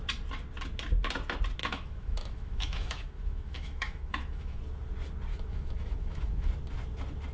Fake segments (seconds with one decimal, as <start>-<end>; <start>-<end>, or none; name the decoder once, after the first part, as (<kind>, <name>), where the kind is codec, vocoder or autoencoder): 1.6-4.6 (autoencoder, DAC-VAE); 5.3-6.5